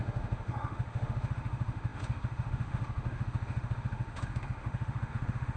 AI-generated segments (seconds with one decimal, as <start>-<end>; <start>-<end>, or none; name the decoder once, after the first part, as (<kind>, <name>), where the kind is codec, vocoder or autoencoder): 0.0-5.6 (autoencoder, DAC-VAE)